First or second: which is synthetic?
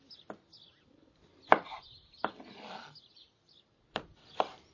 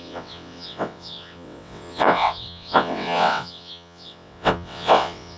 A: second